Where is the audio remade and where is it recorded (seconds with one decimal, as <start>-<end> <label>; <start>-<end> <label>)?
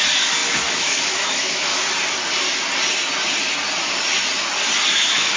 0.0-1.7 remade; 1.7-4.9 recorded; 4.9-5.4 remade